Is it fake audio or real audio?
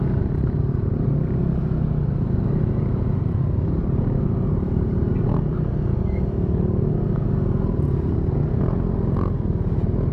real